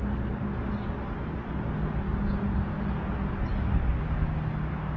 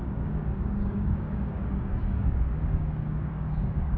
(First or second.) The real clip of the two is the first